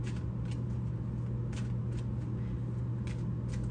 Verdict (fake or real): real